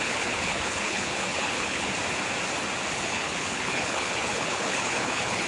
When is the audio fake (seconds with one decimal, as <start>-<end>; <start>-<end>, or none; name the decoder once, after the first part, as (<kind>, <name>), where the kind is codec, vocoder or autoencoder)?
0.0-1.9 (codec, HILCodec); 2.9-5.5